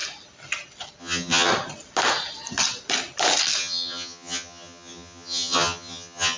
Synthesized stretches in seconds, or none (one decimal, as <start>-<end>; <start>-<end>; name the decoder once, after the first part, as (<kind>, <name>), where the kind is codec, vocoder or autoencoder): 1.0-1.5 (vocoder, HiFi-GAN); 3.6-6.4